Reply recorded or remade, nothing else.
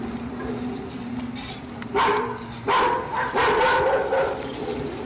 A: recorded